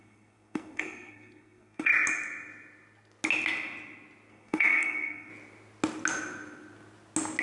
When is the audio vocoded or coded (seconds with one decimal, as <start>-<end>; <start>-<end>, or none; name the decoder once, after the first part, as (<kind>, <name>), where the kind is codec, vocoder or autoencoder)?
0.0-1.9 (codec, SNAC); 4.3-5.3